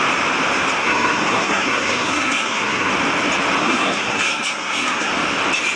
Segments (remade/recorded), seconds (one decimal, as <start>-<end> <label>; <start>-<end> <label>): 0.0-0.8 recorded; 0.8-2.9 remade; 2.9-3.6 recorded; 3.6-5.1 remade; 5.1-5.8 recorded